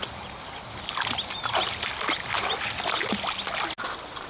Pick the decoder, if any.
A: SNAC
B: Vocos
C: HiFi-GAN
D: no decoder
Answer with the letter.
D